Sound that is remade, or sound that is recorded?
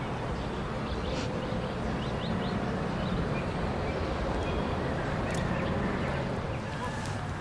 recorded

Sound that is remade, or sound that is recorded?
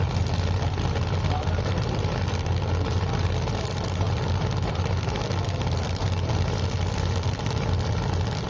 remade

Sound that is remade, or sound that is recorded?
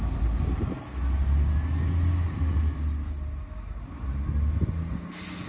recorded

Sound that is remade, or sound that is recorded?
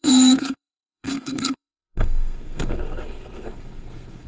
remade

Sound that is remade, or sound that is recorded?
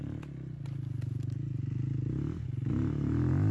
recorded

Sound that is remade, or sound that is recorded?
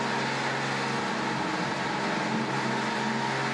recorded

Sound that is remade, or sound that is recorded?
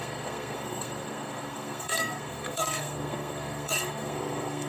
remade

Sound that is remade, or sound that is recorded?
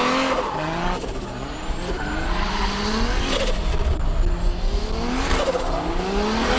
recorded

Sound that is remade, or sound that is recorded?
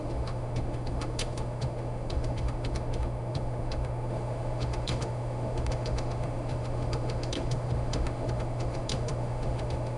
remade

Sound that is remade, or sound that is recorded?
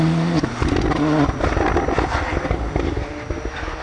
recorded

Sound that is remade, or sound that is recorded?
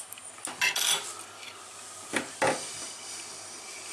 recorded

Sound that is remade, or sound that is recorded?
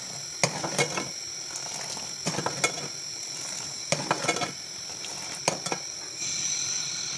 recorded